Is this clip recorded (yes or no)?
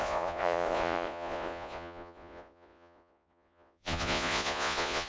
no